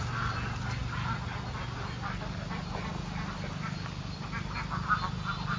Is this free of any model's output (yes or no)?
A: yes